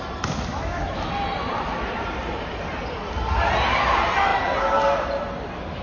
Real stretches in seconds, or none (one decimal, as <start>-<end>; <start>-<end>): 0.0-0.5; 1.1-5.8